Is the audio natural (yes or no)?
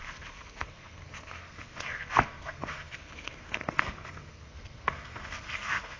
no